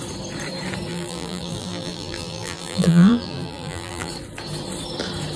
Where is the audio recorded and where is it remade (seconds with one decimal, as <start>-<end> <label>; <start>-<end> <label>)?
0.0-0.9 recorded; 0.9-4.1 remade; 4.1-5.4 recorded